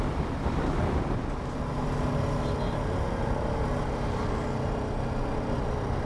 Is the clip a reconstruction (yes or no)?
no